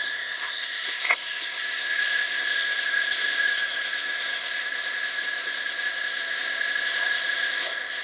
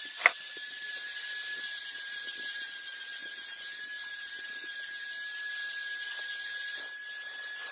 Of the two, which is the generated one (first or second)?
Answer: first